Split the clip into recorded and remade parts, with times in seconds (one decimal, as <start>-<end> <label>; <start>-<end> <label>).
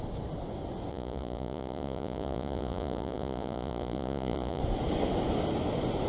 0.0-0.9 recorded; 0.9-4.6 remade; 4.6-6.1 recorded